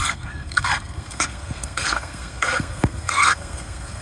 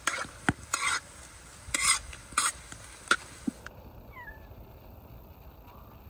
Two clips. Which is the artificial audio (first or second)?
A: first